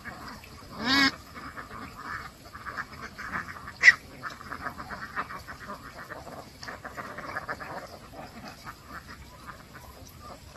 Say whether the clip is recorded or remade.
recorded